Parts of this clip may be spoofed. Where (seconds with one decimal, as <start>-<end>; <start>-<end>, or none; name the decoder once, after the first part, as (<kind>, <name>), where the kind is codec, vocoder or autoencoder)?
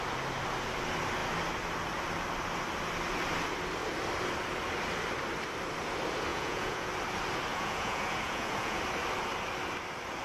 6.3-6.9 (vocoder, Vocos); 7.5-8.8